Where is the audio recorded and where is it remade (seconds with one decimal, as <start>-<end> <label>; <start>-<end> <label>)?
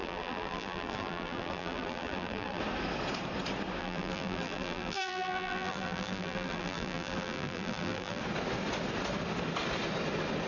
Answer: 0.0-2.6 remade; 2.6-3.8 recorded; 3.8-8.2 remade; 8.2-10.5 recorded